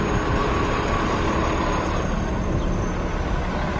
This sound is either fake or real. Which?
real